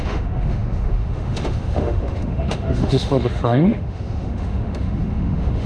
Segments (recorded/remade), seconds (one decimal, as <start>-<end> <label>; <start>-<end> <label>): 0.0-5.7 remade